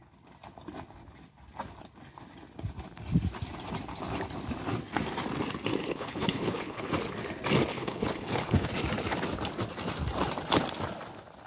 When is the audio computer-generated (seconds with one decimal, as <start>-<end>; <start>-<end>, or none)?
5.8-6.9; 7.7-8.7